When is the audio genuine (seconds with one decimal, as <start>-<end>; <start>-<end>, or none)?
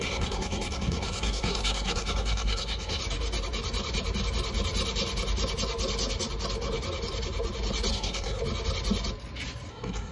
3.0-7.9; 8.4-9.7